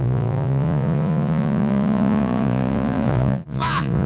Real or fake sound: fake